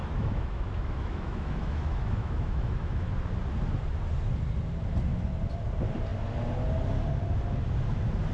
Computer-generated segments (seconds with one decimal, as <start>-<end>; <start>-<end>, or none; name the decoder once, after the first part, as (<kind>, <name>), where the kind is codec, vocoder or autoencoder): 0.0-3.1 (autoencoder, DAC-VAE)